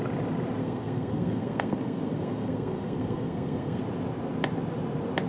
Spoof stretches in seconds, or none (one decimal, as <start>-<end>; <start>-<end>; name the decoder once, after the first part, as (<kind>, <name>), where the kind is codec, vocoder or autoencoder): 0.6-3.8 (codec, SNAC)